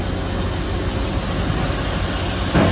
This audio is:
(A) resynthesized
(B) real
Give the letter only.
B